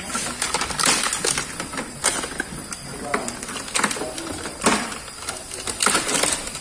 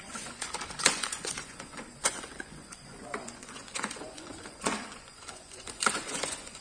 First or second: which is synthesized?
second